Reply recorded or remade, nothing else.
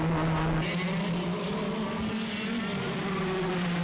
recorded